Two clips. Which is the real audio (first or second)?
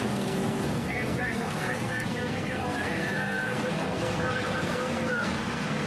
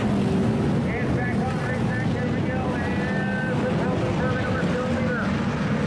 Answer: second